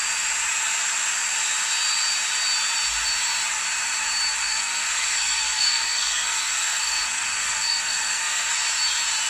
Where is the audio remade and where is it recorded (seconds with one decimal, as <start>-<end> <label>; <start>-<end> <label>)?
0.0-4.4 recorded; 4.4-8.5 remade; 8.5-9.3 recorded